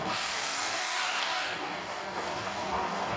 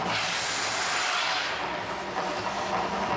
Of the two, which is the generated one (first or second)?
first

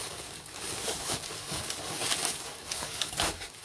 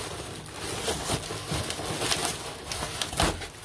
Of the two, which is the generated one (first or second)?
first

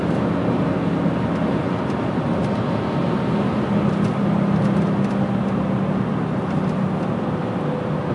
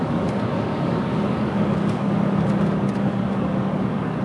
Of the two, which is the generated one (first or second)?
second